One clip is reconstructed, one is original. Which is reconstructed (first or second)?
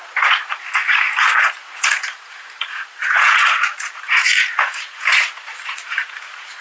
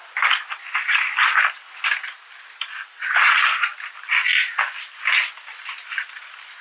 first